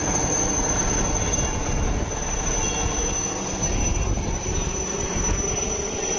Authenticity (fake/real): real